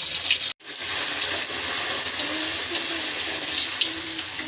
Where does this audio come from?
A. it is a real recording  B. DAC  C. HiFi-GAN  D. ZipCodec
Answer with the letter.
A